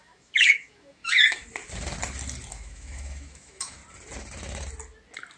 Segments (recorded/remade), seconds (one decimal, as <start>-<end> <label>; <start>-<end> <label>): 0.0-1.4 remade; 1.4-2.5 recorded; 2.5-3.8 remade; 3.8-5.4 recorded